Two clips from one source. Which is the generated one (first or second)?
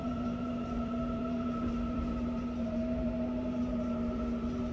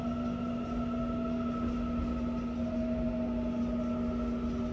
first